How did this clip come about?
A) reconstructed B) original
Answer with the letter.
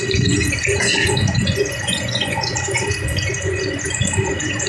A